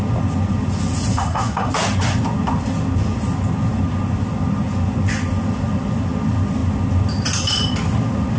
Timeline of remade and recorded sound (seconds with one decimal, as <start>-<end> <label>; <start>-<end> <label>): 0.0-1.1 recorded; 1.1-1.7 remade; 1.7-8.4 recorded

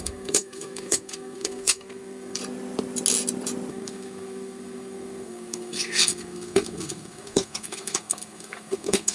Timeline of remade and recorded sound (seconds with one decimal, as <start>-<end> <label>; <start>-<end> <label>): 0.0-2.4 remade; 2.4-3.7 recorded; 3.7-9.1 remade

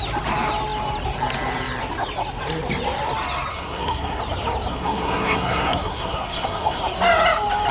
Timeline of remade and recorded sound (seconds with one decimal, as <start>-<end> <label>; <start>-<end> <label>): 0.0-3.5 recorded; 3.5-4.2 remade; 4.2-4.7 recorded; 4.7-6.8 remade; 6.8-7.7 recorded